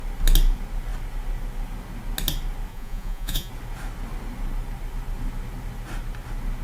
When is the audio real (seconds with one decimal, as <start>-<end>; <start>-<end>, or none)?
0.0-2.7; 3.5-6.6